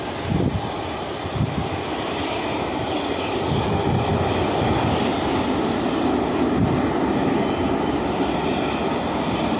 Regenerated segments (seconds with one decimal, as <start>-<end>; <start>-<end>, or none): none